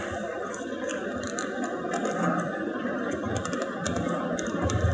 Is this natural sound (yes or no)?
yes